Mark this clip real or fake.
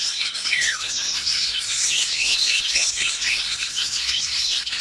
fake